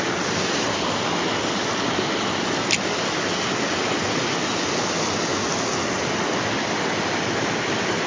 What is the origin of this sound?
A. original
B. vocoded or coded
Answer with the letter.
A